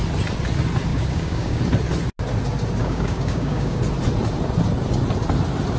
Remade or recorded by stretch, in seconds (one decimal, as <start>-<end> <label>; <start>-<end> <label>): 0.0-0.9 recorded; 0.9-1.6 remade; 1.6-2.8 recorded; 2.8-3.8 remade; 3.8-5.8 recorded

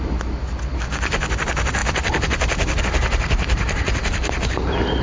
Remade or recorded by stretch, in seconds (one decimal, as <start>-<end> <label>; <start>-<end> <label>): 0.0-5.0 recorded

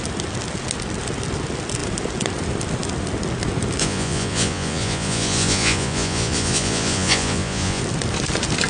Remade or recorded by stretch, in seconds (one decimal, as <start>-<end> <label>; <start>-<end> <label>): 0.0-3.8 recorded; 3.8-7.8 remade; 7.8-8.7 recorded

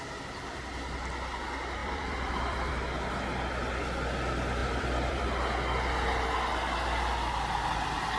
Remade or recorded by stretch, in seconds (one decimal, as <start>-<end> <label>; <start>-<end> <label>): 0.0-1.8 recorded; 1.8-2.7 remade; 2.7-4.6 recorded; 4.6-5.3 remade; 5.3-8.2 recorded

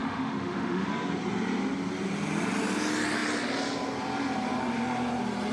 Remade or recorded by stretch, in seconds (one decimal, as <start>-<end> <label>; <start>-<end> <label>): 0.0-0.9 remade; 0.9-5.5 recorded